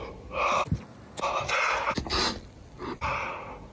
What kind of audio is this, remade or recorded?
recorded